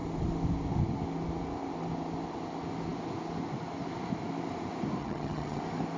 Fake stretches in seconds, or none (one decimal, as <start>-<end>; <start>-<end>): 5.0-5.6